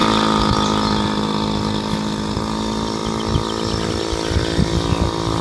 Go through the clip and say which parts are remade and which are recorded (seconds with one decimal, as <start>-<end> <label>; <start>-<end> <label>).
0.0-5.4 recorded